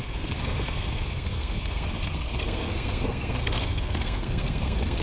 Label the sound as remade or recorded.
remade